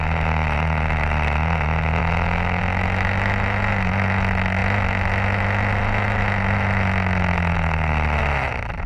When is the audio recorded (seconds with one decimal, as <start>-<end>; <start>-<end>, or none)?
0.0-2.0; 2.6-8.9